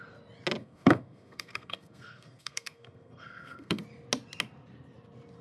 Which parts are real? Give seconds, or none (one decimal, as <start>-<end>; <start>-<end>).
0.0-0.6; 3.8-5.4